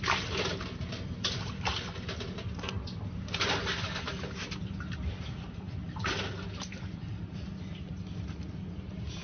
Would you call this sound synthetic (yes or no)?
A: no